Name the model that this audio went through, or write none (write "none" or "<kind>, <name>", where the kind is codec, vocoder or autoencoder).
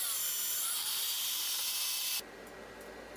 none